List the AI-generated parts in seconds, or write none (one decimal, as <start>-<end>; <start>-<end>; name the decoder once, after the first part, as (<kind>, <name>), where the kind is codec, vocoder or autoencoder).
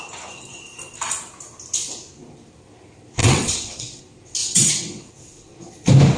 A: 3.2-4.0 (vocoder, WaveNeXt); 4.4-5.1